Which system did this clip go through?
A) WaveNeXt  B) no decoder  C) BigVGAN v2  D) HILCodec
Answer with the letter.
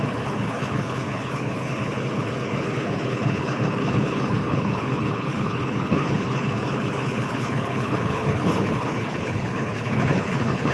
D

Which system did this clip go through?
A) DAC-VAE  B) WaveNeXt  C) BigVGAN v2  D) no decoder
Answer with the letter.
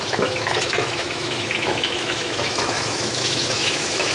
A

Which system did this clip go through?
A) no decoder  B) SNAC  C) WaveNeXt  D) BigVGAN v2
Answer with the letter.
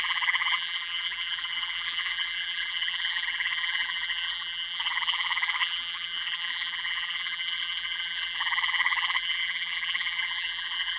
D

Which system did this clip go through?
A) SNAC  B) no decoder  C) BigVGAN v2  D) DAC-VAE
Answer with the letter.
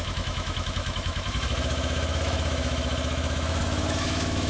D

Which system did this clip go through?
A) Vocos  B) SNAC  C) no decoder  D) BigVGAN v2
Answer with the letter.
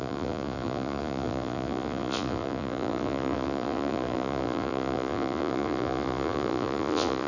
A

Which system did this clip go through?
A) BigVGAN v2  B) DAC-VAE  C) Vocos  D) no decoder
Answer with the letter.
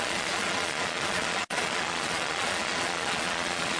C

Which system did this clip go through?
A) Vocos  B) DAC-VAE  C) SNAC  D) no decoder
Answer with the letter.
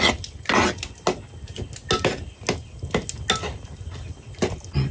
D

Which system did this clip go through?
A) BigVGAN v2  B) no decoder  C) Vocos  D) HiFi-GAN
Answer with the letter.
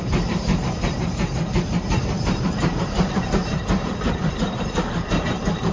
A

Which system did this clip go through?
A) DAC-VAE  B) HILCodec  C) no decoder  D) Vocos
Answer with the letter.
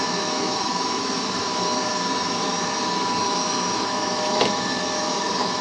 A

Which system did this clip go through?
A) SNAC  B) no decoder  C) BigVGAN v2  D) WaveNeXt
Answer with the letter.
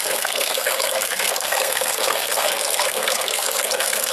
A